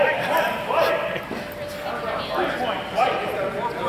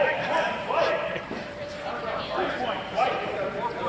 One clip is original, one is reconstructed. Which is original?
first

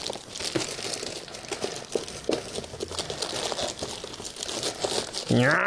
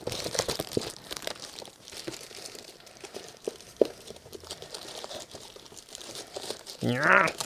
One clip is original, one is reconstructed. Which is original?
first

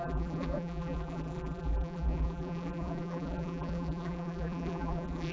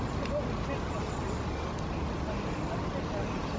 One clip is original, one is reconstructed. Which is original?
second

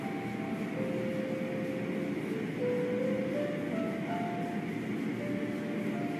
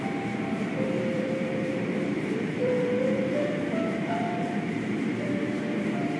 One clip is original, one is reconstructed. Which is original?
first